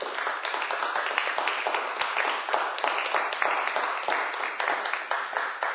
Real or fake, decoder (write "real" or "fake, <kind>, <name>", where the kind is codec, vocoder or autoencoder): real